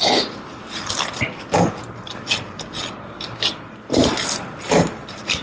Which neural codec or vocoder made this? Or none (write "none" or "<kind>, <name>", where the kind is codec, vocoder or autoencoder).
none